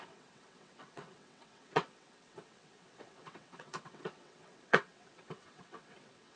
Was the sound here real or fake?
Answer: fake